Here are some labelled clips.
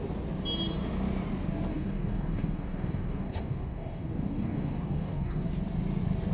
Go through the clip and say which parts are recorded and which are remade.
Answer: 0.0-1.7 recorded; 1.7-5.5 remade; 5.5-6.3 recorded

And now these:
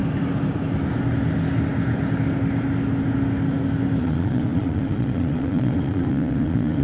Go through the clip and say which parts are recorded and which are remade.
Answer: 0.0-4.0 recorded; 4.0-6.8 remade

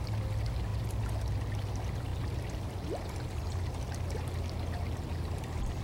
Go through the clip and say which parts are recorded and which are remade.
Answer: 0.0-5.8 recorded

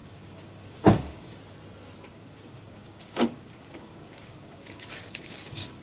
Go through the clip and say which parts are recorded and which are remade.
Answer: 0.0-1.4 remade; 1.4-2.1 recorded; 2.1-5.8 remade

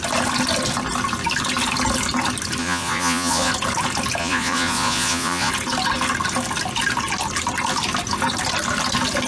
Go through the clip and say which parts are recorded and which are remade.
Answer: 0.0-2.6 recorded; 2.6-3.5 remade; 3.5-4.2 recorded; 4.2-5.5 remade; 5.5-9.3 recorded